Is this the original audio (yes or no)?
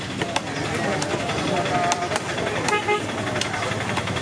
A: yes